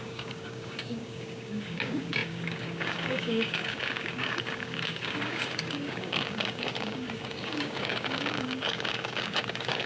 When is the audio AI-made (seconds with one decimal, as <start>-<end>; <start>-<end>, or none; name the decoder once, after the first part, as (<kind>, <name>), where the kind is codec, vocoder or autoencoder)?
0.0-9.9 (codec, DAC)